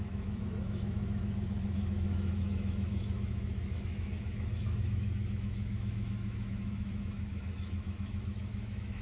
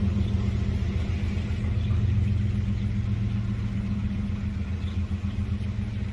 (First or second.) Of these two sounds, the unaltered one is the second